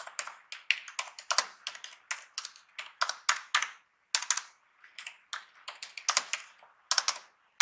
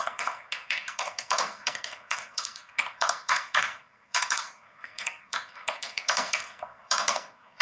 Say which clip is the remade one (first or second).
second